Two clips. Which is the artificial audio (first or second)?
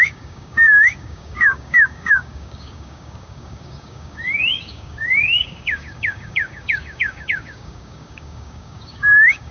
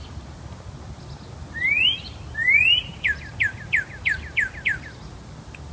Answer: first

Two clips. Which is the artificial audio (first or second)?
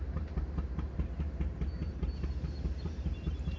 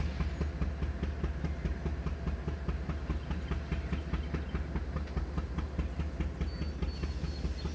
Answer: first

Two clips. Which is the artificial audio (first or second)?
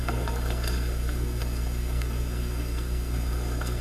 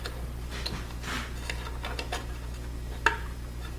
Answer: first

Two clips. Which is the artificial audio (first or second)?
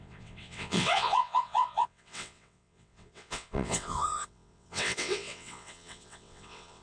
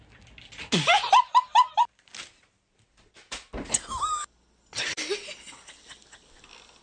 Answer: first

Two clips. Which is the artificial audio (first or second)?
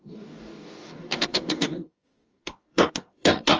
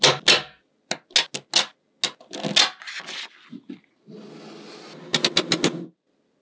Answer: first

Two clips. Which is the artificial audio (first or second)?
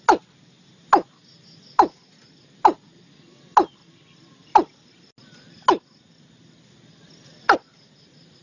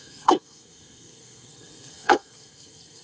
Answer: second